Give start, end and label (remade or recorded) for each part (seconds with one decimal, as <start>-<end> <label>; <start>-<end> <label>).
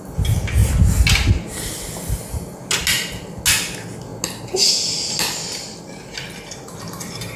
0.0-7.4 recorded